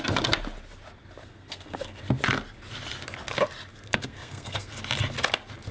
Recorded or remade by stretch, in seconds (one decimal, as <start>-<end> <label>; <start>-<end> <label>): 0.0-1.2 recorded; 1.2-2.0 remade; 2.0-3.7 recorded; 3.7-4.7 remade; 4.7-5.7 recorded

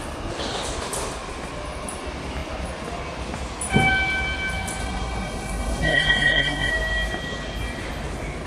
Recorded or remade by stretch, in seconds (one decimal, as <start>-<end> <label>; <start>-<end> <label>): 0.0-4.8 recorded; 4.8-6.7 remade; 6.7-8.5 recorded

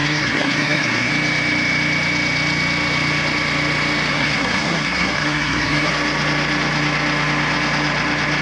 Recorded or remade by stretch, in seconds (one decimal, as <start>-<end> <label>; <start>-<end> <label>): 0.0-1.1 remade; 1.1-4.1 recorded; 4.1-5.9 remade; 5.9-8.4 recorded